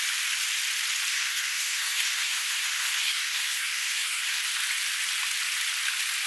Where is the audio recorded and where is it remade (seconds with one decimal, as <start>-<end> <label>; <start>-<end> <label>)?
0.0-1.1 recorded; 1.1-4.4 remade; 4.4-6.3 recorded